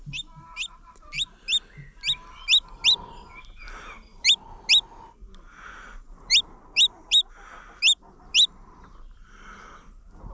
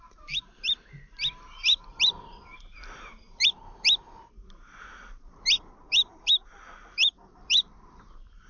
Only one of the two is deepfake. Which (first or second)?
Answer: second